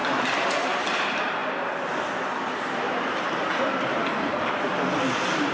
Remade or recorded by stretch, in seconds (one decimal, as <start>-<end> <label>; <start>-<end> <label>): 0.0-5.5 recorded